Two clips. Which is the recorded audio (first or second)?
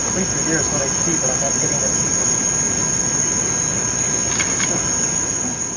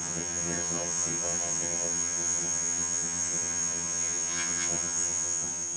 first